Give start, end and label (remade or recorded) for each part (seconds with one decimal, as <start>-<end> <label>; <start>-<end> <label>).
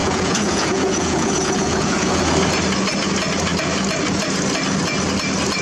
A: 0.0-2.2 remade; 2.2-5.6 recorded